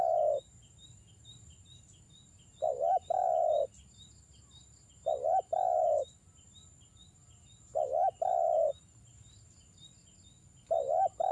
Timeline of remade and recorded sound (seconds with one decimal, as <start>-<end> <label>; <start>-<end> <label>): 0.0-11.3 recorded